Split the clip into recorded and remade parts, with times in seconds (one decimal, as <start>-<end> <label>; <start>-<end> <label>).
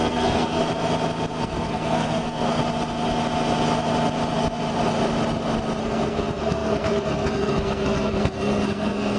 0.0-0.6 remade; 0.6-1.4 recorded; 1.4-2.6 remade; 2.6-5.8 recorded; 5.8-9.2 remade